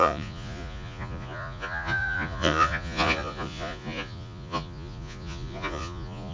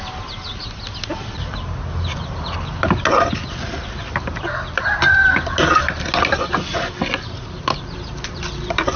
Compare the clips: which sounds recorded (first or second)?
second